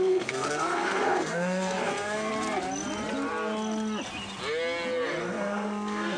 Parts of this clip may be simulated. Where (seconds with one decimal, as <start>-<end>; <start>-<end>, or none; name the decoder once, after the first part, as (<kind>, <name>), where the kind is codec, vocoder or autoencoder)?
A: 0.0-2.3 (codec, SNAC); 5.3-6.2